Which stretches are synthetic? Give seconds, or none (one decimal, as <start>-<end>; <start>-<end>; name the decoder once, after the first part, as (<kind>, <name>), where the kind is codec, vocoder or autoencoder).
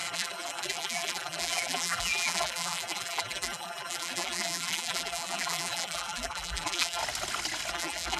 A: 0.0-7.0 (vocoder, BigVGAN v2); 7.7-8.2